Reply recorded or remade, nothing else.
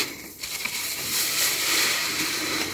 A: remade